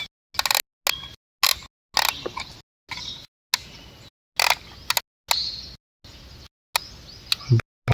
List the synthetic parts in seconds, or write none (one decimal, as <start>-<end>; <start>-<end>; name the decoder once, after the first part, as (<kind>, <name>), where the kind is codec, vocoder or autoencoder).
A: none